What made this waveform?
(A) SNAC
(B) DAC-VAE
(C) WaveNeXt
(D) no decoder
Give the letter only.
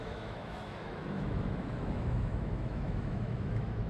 B